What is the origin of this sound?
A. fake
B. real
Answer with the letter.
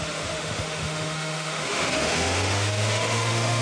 A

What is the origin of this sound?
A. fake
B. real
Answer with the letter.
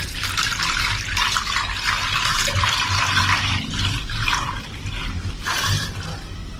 B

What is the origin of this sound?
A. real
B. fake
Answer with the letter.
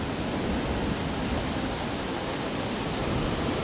A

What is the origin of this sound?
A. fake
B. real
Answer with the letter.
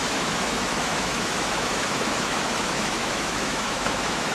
A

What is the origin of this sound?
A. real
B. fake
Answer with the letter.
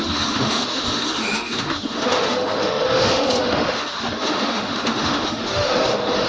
B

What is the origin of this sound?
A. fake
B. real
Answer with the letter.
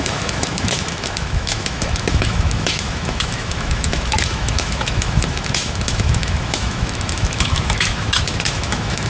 A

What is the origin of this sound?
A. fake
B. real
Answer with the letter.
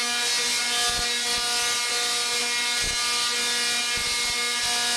B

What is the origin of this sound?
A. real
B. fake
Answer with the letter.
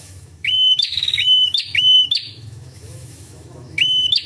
B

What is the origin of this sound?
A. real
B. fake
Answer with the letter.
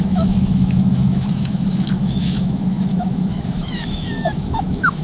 B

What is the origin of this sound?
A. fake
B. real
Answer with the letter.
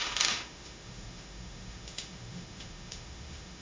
A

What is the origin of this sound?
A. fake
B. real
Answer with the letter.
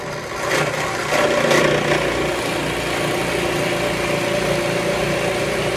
B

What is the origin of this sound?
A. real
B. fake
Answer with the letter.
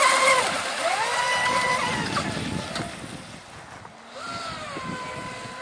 A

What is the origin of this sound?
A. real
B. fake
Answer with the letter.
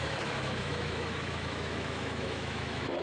B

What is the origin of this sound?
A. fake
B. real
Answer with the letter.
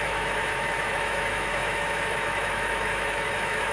A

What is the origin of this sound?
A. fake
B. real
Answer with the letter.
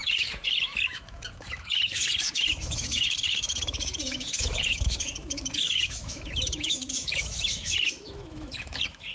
A